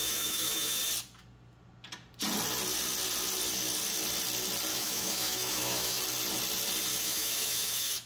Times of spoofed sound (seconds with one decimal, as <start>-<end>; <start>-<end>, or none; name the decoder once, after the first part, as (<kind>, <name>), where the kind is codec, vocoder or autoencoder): 0.0-0.8 (autoencoder, DAC-VAE); 4.7-6.0; 6.9-8.1

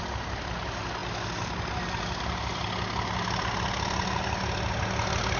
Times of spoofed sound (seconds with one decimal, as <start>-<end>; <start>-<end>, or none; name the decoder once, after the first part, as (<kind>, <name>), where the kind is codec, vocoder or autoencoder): none

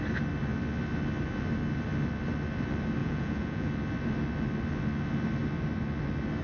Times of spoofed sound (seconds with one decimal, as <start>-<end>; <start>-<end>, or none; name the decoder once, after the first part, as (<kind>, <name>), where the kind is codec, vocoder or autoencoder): 3.0-3.7 (vocoder, Vocos)

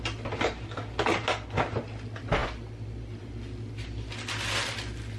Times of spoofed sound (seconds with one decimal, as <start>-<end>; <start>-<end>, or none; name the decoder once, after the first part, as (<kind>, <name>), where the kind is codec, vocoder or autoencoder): none

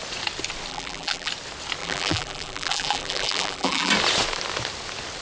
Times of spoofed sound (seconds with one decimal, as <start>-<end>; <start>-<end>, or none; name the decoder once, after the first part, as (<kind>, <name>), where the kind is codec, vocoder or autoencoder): 0.7-1.3 (vocoder, BigVGAN v2); 1.8-3.9

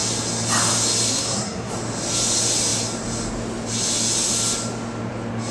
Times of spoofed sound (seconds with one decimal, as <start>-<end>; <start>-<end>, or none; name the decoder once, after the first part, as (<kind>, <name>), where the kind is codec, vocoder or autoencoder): 1.1-1.7 (codec, SNAC)

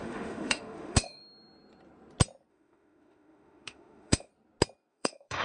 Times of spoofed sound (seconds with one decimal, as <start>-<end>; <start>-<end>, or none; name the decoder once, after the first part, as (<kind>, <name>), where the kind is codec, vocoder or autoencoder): 0.0-1.2 (autoencoder, DAC-VAE); 2.5-4.3; 4.9-5.4